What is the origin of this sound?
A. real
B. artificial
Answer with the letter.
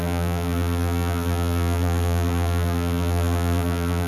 B